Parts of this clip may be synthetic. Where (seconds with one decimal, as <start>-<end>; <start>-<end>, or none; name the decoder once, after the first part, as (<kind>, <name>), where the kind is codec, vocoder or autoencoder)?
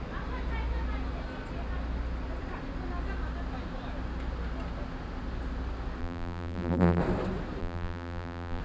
6.0-7.0 (vocoder, BigVGAN v2); 7.6-8.6